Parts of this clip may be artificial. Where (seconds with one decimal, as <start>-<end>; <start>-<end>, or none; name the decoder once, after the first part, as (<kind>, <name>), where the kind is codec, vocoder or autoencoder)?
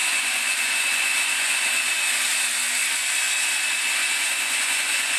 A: 0.0-1.9 (vocoder, Vocos); 4.0-5.2